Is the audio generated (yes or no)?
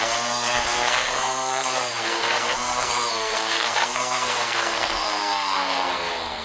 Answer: yes